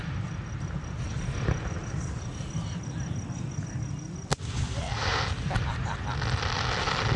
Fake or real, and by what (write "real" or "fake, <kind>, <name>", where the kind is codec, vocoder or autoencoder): real